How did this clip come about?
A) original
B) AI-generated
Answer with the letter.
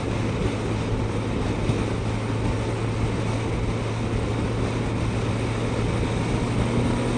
A